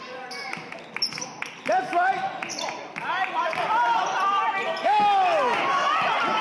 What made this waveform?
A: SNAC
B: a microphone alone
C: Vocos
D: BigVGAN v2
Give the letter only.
B